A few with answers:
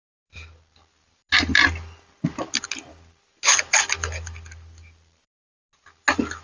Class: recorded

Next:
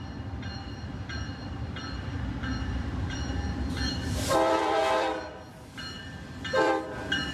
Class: remade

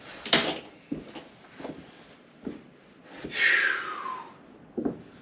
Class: recorded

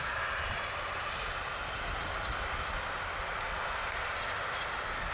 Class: recorded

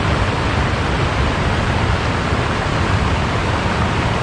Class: recorded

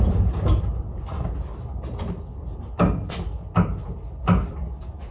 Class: recorded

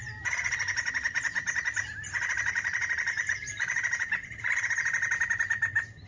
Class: recorded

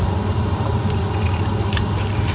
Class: recorded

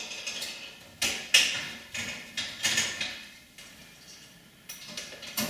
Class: recorded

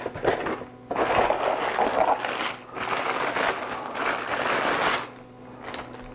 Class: recorded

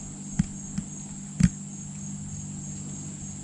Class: recorded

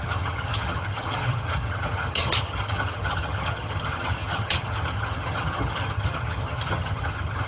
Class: remade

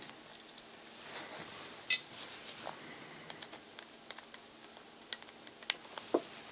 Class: recorded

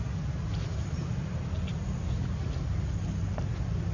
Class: recorded